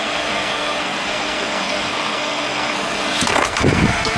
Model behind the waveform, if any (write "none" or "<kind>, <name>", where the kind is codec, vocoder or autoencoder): codec, SNAC